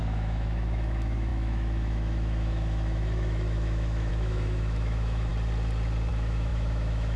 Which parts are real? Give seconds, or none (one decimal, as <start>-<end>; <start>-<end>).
5.3-6.1